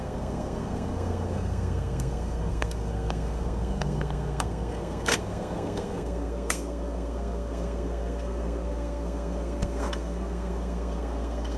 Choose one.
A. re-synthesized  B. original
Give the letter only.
A